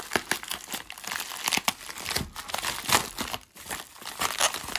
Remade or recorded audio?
recorded